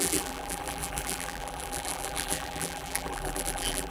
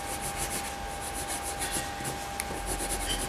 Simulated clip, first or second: first